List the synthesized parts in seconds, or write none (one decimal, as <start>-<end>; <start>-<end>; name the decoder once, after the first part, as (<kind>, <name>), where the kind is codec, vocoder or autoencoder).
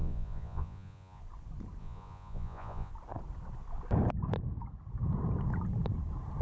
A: 0.0-1.2 (vocoder, Vocos); 1.8-2.9